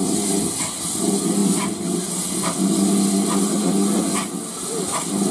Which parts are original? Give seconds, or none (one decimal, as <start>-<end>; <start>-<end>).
0.0-5.3